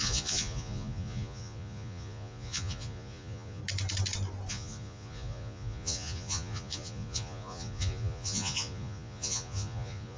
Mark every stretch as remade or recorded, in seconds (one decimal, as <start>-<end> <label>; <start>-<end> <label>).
0.0-3.6 remade; 3.6-4.5 recorded; 4.5-10.2 remade